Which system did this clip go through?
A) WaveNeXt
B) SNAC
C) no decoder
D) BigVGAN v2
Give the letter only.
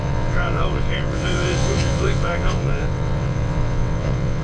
A